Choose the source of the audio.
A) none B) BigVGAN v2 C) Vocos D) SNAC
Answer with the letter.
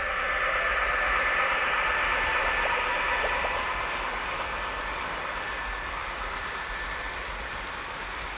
A